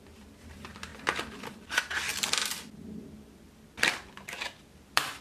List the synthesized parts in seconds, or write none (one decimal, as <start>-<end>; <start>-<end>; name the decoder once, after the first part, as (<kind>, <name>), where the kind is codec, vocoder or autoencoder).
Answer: 0.0-0.9 (vocoder, BigVGAN v2); 1.5-5.2